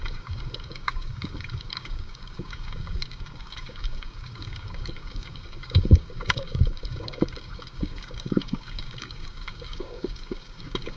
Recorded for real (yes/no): no